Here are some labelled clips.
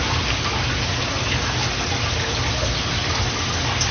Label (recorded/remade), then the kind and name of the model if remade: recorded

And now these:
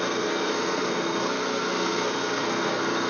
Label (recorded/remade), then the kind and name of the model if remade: remade, codec, SNAC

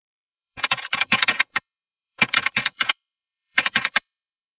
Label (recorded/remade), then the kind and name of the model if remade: remade, vocoder, Vocos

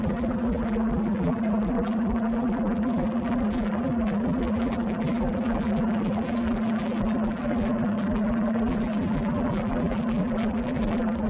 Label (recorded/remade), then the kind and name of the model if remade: remade, vocoder, BigVGAN v2